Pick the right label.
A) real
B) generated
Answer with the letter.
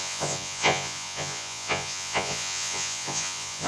B